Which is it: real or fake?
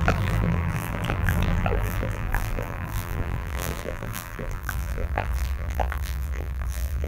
fake